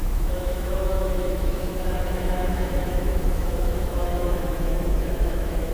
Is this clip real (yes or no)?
no